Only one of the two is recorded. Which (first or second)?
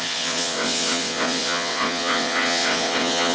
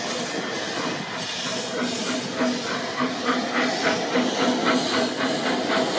second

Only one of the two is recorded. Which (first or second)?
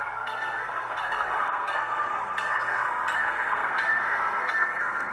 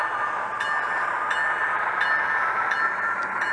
second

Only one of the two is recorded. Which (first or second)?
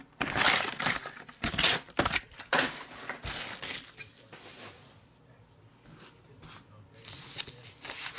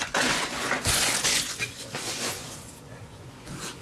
first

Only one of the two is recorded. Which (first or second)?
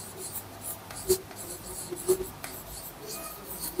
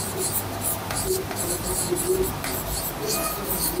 second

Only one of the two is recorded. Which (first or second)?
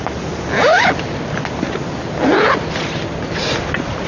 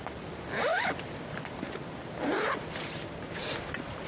first